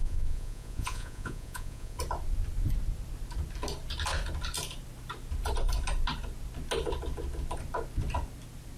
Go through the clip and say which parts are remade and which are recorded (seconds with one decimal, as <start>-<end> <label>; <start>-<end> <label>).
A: 0.0-2.0 remade; 2.0-8.8 recorded